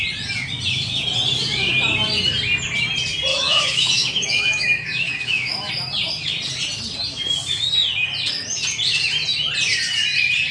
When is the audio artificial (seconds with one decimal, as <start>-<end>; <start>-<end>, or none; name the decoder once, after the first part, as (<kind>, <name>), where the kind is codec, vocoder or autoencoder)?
3.3-5.7 (autoencoder, DAC-VAE)